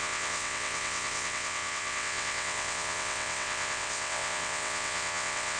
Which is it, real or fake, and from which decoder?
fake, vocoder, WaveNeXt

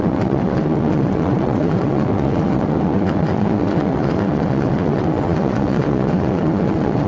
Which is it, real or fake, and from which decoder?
fake, vocoder, WaveNeXt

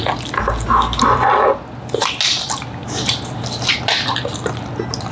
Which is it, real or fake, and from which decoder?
real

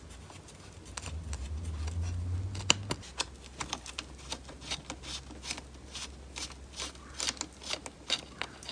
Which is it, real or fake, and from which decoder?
real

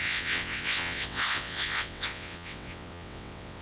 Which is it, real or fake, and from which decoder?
fake, vocoder, WaveNeXt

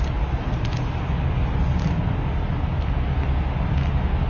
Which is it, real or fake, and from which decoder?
real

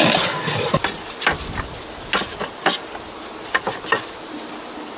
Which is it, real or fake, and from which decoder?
real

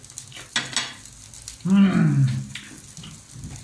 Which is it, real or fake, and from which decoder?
real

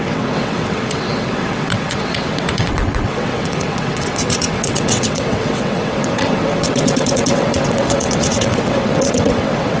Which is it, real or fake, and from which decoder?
fake, vocoder, WaveNeXt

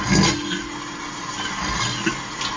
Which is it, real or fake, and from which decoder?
real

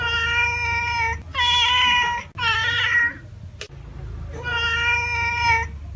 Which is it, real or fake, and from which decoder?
real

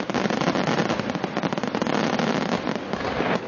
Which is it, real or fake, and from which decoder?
real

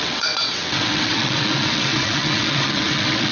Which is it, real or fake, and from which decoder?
fake, vocoder, WaveNeXt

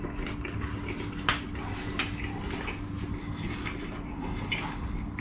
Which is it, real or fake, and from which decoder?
real